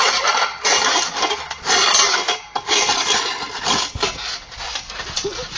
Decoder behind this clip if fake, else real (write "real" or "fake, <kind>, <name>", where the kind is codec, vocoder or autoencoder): real